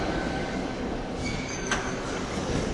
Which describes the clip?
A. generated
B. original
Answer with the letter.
A